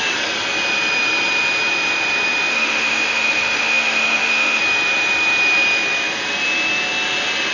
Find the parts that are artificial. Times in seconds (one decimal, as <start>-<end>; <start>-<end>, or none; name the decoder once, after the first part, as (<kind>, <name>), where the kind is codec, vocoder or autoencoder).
2.5-4.6 (autoencoder, DAC-VAE)

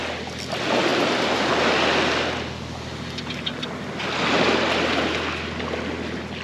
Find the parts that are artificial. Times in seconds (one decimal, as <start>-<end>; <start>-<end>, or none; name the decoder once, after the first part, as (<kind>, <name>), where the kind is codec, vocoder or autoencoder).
none

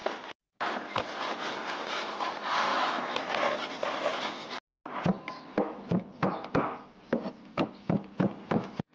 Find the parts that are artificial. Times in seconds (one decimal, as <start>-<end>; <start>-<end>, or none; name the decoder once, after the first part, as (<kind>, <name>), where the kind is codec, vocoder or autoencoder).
2.7-3.2 (autoencoder, DAC-VAE)

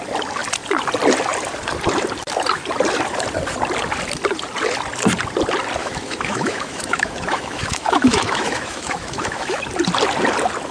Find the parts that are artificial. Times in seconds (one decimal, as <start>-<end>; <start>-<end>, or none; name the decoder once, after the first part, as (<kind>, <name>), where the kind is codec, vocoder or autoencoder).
5.8-9.6 (autoencoder, DAC-VAE)

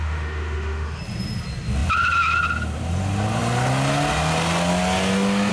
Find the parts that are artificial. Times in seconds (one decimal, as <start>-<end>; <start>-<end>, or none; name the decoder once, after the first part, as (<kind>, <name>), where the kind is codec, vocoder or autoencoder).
0.0-1.0 (autoencoder, DAC-VAE)